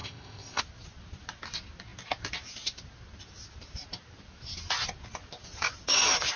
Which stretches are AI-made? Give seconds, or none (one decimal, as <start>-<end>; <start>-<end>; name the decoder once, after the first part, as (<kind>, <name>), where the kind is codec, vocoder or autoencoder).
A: 0.0-0.6 (codec, ZipCodec)